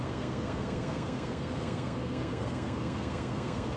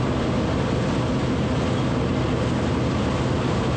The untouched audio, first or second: second